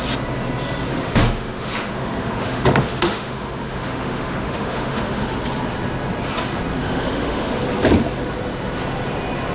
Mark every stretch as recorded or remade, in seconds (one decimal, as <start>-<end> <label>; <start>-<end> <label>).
0.0-0.9 recorded; 0.9-5.4 remade; 5.4-6.8 recorded; 6.8-7.6 remade; 7.6-9.5 recorded